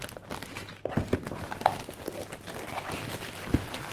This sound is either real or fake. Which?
real